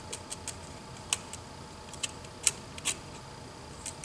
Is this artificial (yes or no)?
no